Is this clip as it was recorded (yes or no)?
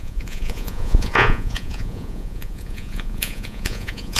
no